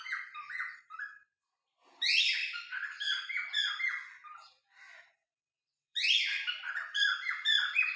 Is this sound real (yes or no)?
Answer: no